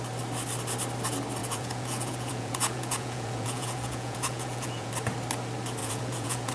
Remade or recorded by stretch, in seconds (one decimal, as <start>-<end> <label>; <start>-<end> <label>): 0.0-1.4 recorded; 1.4-4.9 remade; 4.9-5.8 recorded; 5.8-6.5 remade